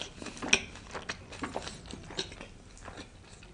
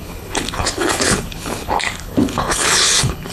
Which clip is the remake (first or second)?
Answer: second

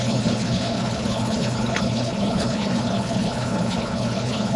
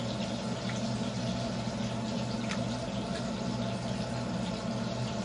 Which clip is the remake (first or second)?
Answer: first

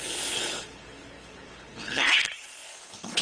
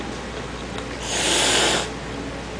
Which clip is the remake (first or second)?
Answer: first